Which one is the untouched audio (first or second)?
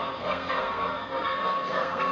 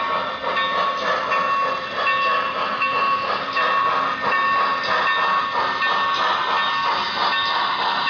second